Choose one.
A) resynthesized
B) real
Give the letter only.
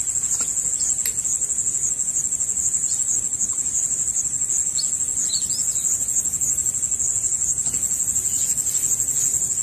B